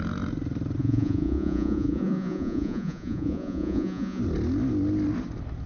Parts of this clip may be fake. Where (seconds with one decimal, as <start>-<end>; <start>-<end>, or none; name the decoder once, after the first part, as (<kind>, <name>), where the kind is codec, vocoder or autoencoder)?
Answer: 0.8-4.2 (vocoder, Vocos)